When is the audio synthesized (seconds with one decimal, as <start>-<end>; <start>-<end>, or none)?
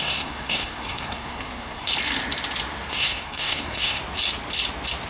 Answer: 0.0-1.9; 2.9-4.0